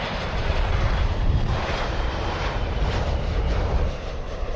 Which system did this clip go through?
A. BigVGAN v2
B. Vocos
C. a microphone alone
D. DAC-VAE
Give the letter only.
A